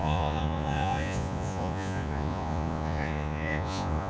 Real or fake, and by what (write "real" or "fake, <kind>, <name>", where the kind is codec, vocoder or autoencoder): fake, vocoder, Vocos